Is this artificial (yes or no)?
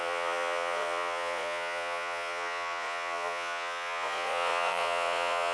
yes